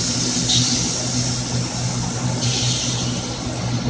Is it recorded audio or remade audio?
recorded